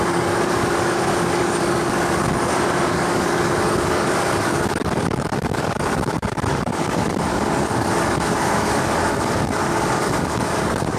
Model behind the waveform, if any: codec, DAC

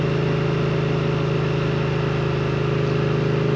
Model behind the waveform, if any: none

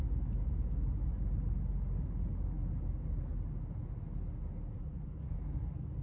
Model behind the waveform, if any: none